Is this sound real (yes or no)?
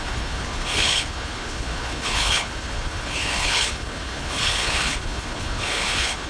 no